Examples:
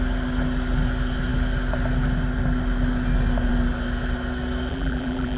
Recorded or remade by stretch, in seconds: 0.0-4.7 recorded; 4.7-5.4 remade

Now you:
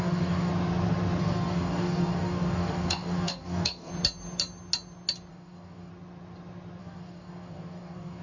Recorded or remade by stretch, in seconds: 0.0-0.5 remade; 0.5-1.2 recorded; 1.2-3.9 remade; 3.9-5.3 recorded; 5.3-5.9 remade; 5.9-6.8 recorded; 6.8-8.2 remade

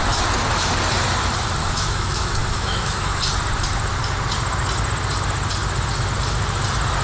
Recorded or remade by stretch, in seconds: 0.0-1.6 recorded; 1.6-3.2 remade; 3.2-7.0 recorded

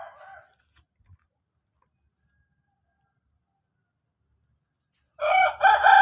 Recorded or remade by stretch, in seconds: 0.0-6.0 recorded

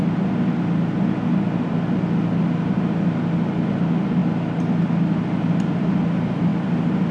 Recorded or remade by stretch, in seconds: 0.0-7.1 recorded

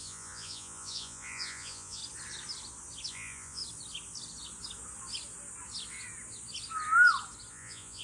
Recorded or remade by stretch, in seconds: 0.0-2.0 remade; 2.0-3.1 recorded; 3.1-3.6 remade; 3.6-7.5 recorded; 7.5-8.0 remade